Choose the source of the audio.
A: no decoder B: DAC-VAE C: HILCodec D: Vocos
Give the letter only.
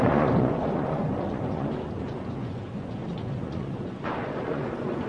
D